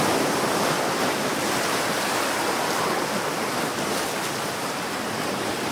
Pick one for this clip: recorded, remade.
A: recorded